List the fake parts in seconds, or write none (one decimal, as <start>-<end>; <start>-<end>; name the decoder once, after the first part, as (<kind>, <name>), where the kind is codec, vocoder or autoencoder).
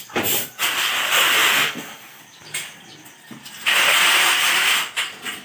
1.5-2.2 (codec, SNAC)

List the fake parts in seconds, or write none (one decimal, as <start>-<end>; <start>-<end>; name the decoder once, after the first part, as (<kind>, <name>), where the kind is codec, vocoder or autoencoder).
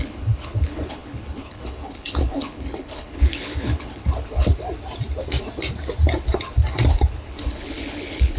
0.0-4.5 (codec, HILCodec); 6.9-8.4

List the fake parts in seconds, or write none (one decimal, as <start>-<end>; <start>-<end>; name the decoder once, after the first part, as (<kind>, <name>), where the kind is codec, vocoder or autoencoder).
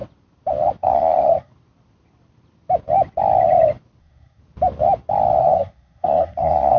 0.8-1.5 (codec, SNAC); 4.0-4.4; 5.4-6.8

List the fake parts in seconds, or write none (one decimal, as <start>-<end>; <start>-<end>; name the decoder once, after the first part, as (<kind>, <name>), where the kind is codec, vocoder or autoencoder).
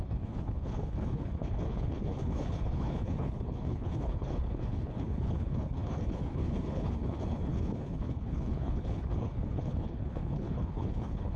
0.0-11.4 (codec, HILCodec)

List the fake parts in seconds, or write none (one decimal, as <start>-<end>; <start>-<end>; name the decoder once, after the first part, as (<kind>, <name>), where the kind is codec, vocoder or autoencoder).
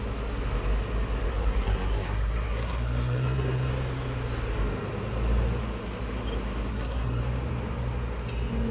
1.3-3.7 (codec, SNAC); 6.7-7.2